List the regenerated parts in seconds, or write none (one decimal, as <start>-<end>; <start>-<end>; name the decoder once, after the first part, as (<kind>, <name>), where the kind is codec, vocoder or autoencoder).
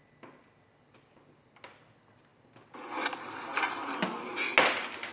none